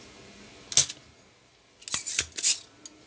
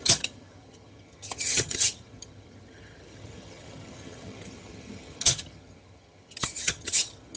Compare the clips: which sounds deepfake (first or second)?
second